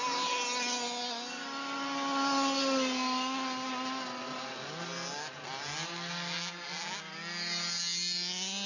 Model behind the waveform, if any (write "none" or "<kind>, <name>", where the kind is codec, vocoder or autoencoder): none